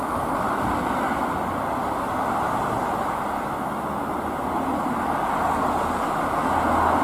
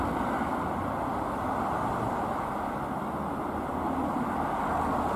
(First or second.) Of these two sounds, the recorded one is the first